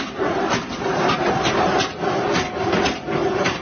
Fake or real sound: real